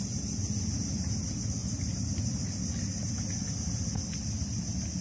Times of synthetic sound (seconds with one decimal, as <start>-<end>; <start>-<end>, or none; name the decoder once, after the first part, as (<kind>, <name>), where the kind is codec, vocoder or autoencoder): none